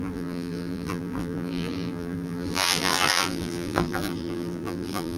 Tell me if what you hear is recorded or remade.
remade